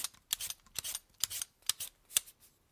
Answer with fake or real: real